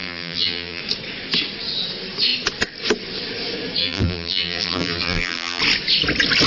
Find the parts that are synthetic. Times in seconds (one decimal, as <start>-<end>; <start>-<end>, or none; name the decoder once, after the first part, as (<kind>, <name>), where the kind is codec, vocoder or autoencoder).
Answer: 0.0-0.8 (vocoder, BigVGAN v2); 3.8-5.6